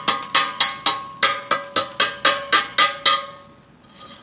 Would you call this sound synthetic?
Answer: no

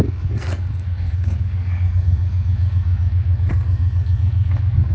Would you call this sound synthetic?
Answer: yes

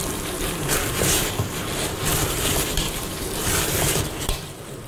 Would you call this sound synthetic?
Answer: yes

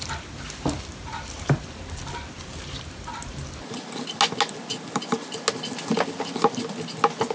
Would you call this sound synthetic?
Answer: no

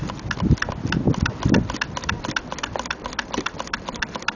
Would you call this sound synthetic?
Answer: no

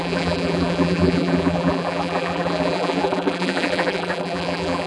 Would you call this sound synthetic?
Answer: yes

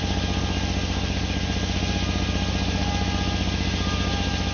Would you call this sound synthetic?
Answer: no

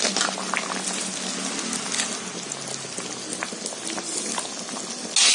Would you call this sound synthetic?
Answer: no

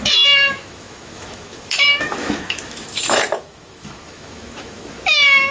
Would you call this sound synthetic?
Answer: yes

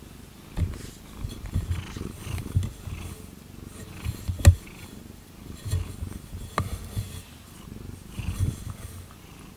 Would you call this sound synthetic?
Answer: no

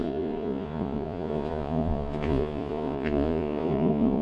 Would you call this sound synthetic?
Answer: yes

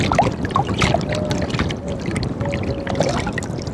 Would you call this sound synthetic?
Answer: no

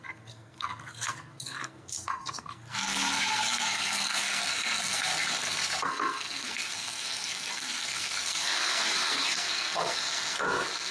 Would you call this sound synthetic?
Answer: yes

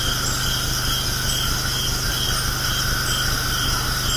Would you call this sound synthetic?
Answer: no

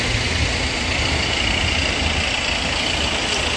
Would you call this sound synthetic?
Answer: no